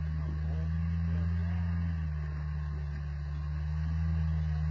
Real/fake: real